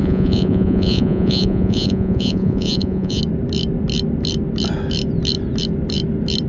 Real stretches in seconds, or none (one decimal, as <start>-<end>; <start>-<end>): 3.2-6.5